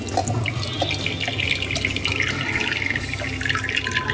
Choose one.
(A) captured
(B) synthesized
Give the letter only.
A